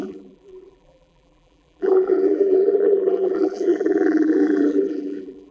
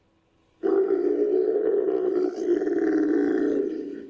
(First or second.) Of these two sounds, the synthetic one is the first